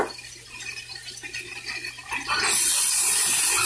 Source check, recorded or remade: recorded